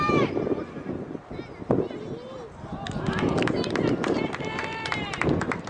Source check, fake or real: real